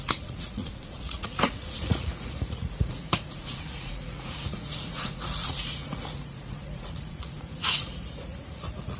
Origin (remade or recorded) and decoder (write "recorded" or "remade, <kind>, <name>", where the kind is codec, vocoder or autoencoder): remade, vocoder, Vocos